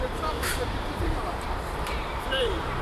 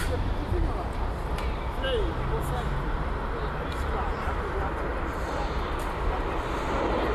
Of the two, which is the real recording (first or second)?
second